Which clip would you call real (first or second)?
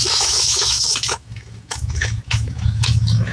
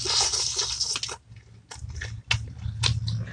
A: second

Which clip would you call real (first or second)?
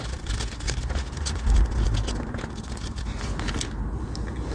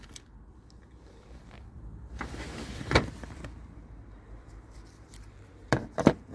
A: first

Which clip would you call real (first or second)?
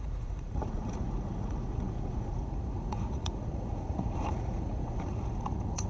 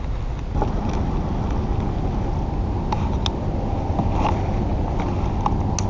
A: second